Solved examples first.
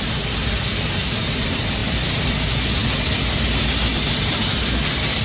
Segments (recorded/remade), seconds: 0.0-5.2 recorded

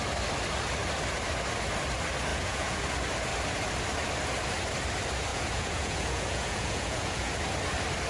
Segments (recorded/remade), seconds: 0.0-2.3 recorded; 2.3-2.8 remade; 2.8-5.3 recorded; 5.3-7.3 remade; 7.3-8.1 recorded

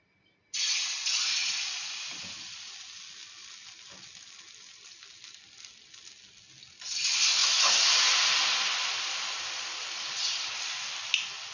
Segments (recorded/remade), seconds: 0.0-11.5 recorded